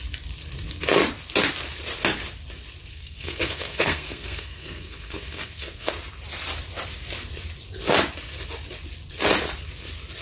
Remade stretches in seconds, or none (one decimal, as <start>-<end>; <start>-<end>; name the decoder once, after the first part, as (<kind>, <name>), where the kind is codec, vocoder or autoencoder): 2.9-5.9 (codec, SNAC)